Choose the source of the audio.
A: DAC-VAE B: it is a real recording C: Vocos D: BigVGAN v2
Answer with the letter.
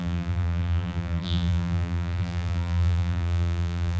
D